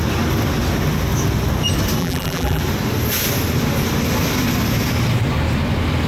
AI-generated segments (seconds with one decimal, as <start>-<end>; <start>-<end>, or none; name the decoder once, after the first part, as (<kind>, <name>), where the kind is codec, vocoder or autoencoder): 2.0-2.6 (vocoder, BigVGAN v2)